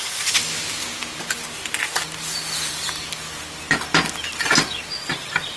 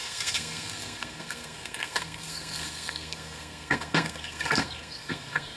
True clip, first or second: first